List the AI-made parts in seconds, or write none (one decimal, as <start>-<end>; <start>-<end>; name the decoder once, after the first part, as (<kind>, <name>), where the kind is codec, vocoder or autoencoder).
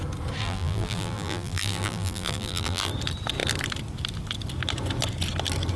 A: 0.4-2.9 (vocoder, BigVGAN v2)